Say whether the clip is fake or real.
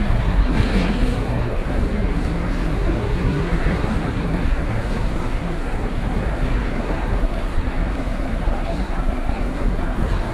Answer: fake